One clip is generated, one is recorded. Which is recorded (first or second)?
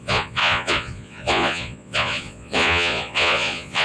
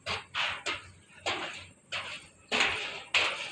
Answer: second